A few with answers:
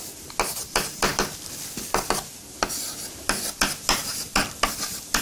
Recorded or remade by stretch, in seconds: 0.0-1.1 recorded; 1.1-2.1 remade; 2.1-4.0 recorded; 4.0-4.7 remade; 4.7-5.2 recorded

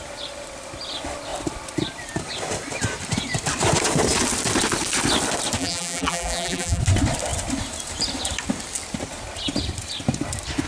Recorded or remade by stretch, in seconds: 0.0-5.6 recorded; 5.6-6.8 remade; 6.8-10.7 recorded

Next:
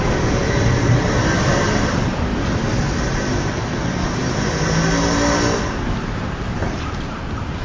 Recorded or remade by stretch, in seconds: 0.0-2.3 remade; 2.3-6.2 recorded; 6.2-7.6 remade

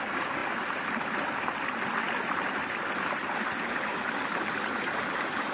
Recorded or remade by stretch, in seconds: 0.0-3.9 remade; 3.9-5.5 recorded

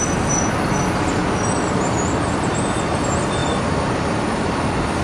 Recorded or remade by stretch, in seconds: 0.0-3.4 recorded; 3.4-3.9 remade; 3.9-5.0 recorded